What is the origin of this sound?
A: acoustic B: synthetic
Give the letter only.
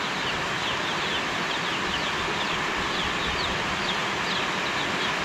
A